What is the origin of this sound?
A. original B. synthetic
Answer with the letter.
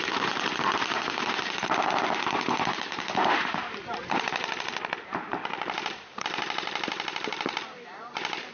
B